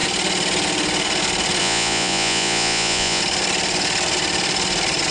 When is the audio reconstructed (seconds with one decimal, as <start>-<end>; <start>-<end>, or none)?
1.6-3.2